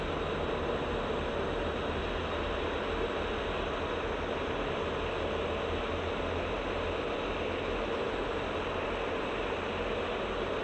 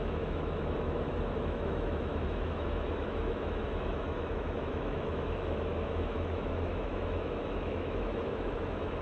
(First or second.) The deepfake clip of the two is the second